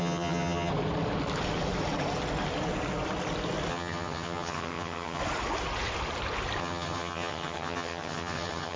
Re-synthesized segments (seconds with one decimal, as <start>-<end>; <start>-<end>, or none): 0.0-0.7; 3.7-5.2; 6.6-8.8